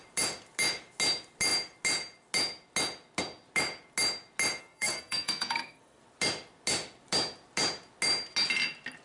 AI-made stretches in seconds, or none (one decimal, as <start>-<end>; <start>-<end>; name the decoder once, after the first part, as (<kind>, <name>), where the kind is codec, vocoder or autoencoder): 4.6-6.0 (codec, SNAC)